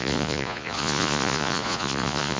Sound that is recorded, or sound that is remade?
remade